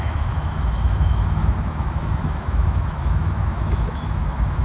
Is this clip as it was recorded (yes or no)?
no